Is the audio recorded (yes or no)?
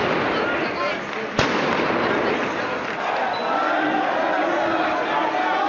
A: yes